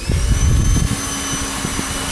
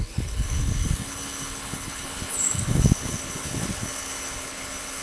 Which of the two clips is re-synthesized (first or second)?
second